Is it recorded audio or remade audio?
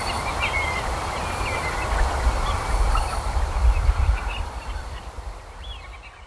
recorded